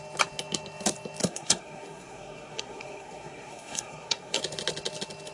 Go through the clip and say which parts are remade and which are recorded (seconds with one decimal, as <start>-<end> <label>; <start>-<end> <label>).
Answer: 0.0-1.2 recorded; 1.2-4.4 remade; 4.4-5.3 recorded